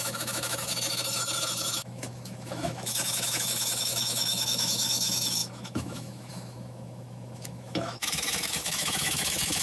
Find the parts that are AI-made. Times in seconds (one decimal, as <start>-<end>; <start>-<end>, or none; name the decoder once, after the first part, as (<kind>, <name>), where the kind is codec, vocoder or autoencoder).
0.0-9.6 (autoencoder, DAC-VAE)